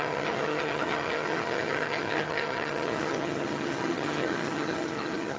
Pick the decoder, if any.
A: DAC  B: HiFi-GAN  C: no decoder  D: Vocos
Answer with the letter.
B